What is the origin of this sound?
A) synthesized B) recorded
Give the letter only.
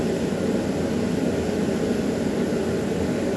B